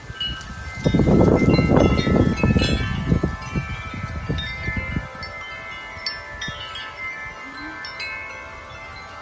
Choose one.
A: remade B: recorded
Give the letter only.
B